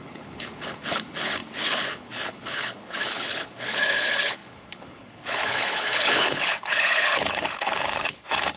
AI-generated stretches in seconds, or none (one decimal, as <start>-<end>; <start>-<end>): 0.0-8.6

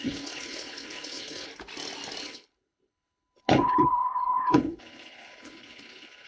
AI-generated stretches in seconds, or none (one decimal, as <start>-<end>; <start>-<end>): 0.0-1.5; 2.2-6.3

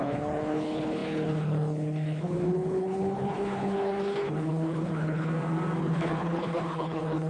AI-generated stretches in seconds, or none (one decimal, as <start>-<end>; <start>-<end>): 0.0-5.3; 5.8-7.3

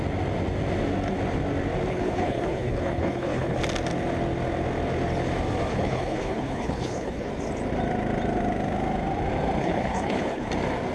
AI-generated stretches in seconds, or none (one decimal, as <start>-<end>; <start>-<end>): 1.9-3.6; 5.7-7.3; 9.6-10.5

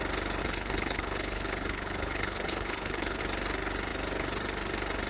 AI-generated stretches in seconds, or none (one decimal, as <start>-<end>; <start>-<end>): 0.4-3.2

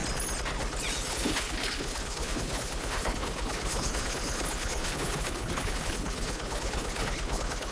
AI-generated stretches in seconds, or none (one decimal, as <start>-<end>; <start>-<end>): 1.1-7.7